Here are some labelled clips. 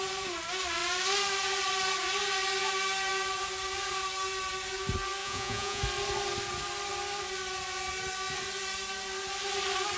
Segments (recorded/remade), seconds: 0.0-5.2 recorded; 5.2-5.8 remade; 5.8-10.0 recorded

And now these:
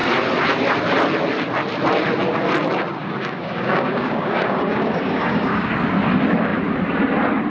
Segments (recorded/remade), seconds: 0.0-3.0 recorded; 3.0-5.7 remade; 5.7-7.5 recorded

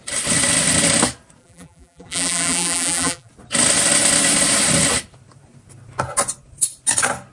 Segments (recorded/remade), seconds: 0.0-1.4 recorded; 1.4-3.3 remade; 3.3-7.3 recorded

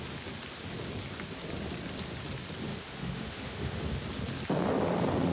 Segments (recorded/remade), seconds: 0.0-2.7 recorded; 2.7-3.9 remade; 3.9-5.3 recorded

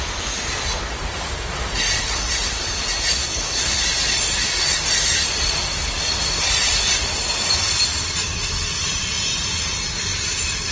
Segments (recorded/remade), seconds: 0.0-3.2 recorded; 3.2-3.8 remade; 3.8-10.7 recorded